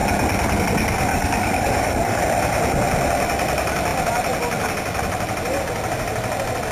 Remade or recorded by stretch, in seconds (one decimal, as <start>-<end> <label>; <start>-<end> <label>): 0.0-1.1 recorded; 1.1-2.2 remade; 2.2-6.7 recorded